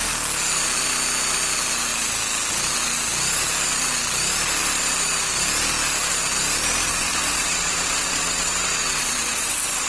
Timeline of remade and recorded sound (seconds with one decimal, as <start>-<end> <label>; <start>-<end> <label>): 0.0-6.9 recorded; 6.9-9.9 remade